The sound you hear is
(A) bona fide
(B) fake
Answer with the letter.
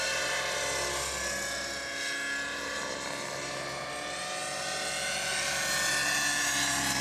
A